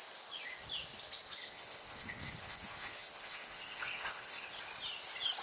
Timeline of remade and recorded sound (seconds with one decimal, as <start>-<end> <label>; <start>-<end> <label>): 0.0-1.4 recorded; 1.4-4.6 remade; 4.6-5.4 recorded

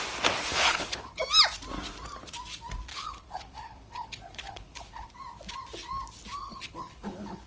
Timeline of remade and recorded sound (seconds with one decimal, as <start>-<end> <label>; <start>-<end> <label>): 0.0-0.5 recorded; 0.5-1.2 remade; 1.2-2.9 recorded; 2.9-5.1 remade; 5.1-6.4 recorded; 6.4-7.5 remade

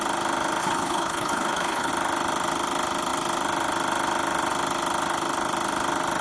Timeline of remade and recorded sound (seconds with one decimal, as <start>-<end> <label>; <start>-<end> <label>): 0.0-0.6 recorded; 0.6-1.9 remade; 1.9-6.2 recorded

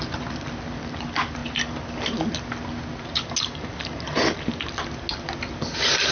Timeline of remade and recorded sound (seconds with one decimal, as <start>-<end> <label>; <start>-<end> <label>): 0.0-6.1 recorded

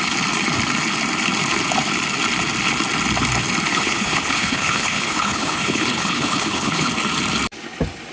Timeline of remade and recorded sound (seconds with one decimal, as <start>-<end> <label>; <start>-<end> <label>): 0.0-3.7 recorded; 3.7-6.9 remade; 6.9-8.1 recorded

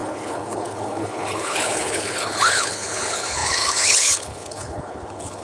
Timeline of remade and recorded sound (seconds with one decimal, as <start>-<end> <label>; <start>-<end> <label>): 0.0-5.4 remade

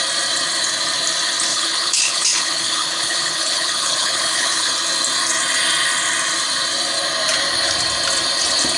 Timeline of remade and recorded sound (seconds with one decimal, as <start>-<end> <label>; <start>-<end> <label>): 0.0-1.5 recorded; 1.5-4.7 remade; 4.7-8.8 recorded